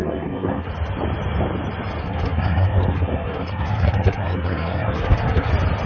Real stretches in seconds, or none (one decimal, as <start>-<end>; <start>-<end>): 0.7-2.0; 5.5-5.9